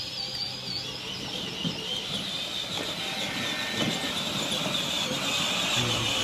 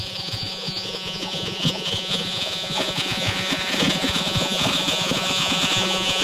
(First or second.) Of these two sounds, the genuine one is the first